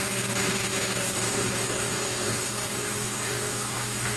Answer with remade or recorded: remade